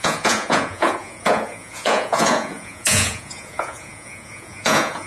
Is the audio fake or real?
fake